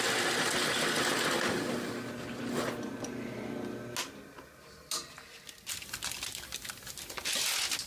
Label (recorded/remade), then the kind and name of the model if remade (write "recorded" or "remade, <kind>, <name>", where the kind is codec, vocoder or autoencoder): recorded